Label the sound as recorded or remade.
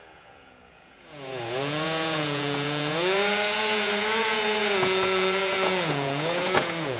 remade